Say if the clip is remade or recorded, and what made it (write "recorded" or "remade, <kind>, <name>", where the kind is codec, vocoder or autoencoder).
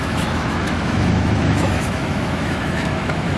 remade, autoencoder, DAC-VAE